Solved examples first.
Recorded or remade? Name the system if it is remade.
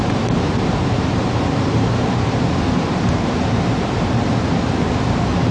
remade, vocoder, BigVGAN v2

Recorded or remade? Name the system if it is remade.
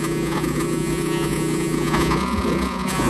remade, vocoder, Vocos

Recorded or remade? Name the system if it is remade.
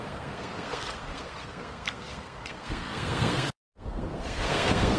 remade, codec, SNAC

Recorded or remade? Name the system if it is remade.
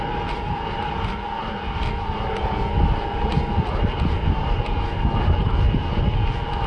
recorded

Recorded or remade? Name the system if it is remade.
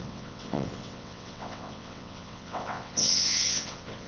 remade, vocoder, WaveNeXt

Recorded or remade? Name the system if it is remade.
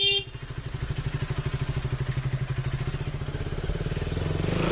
recorded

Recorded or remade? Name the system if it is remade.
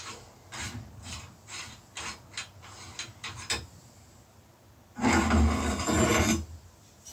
recorded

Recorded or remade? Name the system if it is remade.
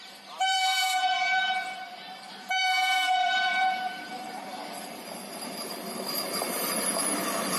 remade, vocoder, BigVGAN v2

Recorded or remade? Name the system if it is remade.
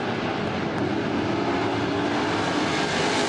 recorded